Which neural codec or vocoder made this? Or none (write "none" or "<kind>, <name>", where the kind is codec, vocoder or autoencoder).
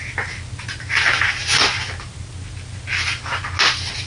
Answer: none